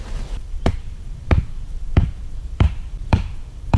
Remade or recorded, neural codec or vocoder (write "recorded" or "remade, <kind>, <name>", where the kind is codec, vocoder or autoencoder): remade, vocoder, BigVGAN v2